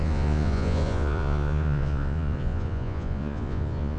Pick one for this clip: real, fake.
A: fake